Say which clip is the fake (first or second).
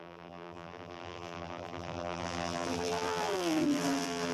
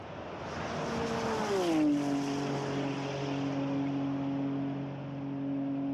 first